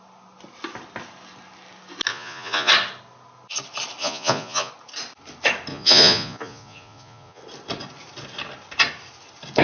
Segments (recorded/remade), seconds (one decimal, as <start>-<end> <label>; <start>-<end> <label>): 0.0-2.1 recorded; 2.1-2.7 remade; 2.7-4.0 recorded; 4.0-4.7 remade; 4.7-5.7 recorded; 5.7-7.4 remade; 7.4-9.6 recorded